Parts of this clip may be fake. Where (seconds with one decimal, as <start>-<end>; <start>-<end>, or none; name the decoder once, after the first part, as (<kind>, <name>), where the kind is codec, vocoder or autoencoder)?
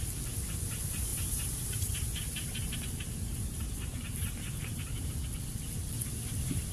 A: 1.1-5.1 (vocoder, BigVGAN v2)